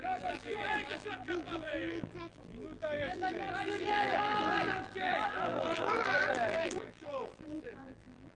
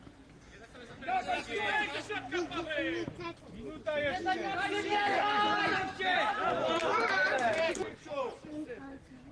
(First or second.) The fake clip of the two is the first